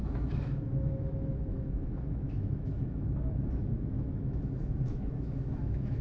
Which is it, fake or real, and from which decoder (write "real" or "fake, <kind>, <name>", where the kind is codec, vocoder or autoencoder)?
fake, autoencoder, DAC-VAE